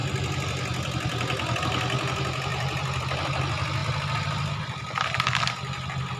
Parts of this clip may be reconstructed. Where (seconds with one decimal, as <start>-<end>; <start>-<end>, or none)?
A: 2.5-3.0